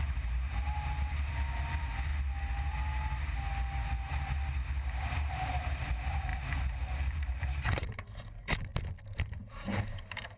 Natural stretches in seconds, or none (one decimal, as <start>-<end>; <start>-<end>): 2.1-5.3; 8.7-9.4